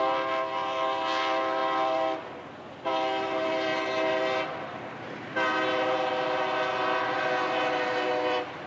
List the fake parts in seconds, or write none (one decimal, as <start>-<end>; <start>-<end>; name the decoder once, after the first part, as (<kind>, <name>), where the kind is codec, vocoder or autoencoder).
none